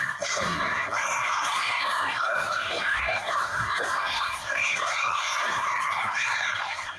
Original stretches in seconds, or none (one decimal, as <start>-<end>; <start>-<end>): none